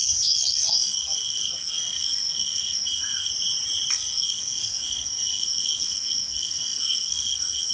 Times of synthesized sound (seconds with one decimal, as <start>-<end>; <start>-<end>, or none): 0.0-3.3; 3.9-7.7